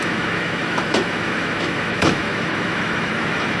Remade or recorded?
remade